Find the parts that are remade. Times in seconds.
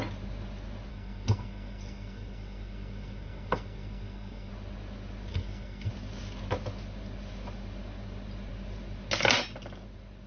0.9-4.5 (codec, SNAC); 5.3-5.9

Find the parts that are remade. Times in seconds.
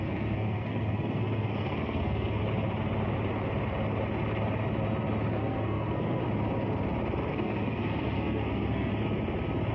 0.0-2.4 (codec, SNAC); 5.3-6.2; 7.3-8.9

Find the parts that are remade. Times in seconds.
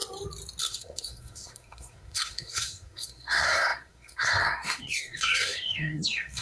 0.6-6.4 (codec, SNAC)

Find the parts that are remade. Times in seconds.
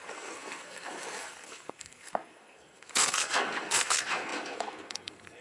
0.0-5.4 (codec, SNAC)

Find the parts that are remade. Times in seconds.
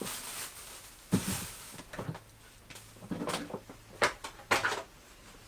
none